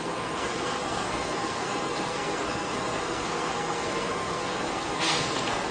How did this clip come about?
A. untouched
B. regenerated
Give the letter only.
B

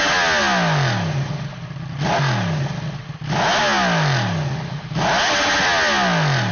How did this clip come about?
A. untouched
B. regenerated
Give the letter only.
A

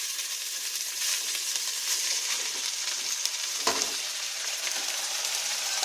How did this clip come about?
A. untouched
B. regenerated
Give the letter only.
B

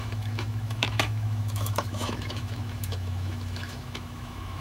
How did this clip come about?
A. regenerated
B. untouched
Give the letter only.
A